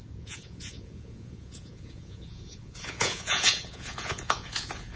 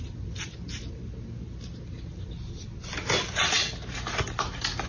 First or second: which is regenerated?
first